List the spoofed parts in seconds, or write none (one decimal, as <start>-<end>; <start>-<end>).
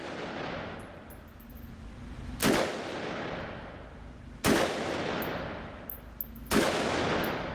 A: none